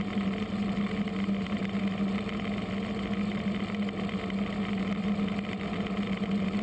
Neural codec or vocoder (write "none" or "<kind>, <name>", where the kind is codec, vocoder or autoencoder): none